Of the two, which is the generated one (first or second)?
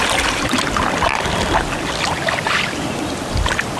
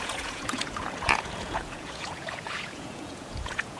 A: second